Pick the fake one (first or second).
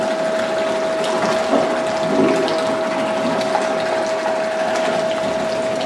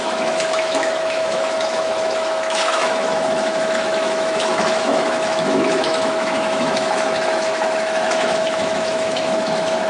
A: second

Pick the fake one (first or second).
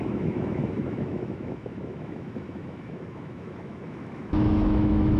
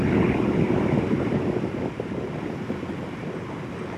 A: first